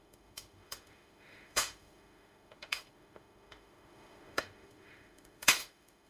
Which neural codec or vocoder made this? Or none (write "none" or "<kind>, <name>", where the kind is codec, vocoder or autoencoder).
autoencoder, DAC-VAE